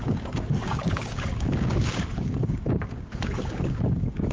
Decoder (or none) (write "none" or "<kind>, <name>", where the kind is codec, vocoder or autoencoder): codec, DAC